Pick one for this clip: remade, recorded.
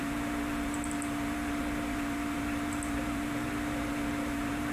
remade